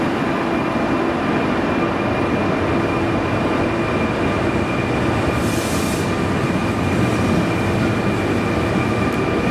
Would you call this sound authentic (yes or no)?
yes